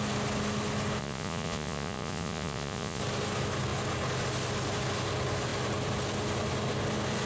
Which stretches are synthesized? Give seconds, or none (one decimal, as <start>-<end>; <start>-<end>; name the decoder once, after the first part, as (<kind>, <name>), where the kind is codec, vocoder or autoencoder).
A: 1.0-3.0 (vocoder, Vocos)